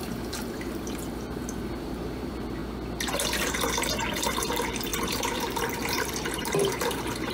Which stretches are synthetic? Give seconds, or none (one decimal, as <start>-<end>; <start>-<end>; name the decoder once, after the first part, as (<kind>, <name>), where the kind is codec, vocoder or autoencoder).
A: 0.0-2.6 (vocoder, BigVGAN v2); 3.5-7.3